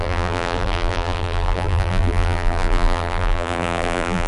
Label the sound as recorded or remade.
remade